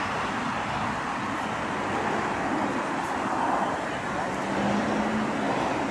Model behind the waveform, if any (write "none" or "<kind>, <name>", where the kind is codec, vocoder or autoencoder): none